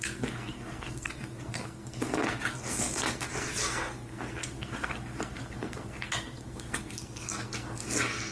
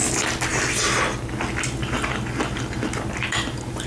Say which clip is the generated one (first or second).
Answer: first